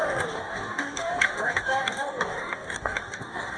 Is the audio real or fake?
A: fake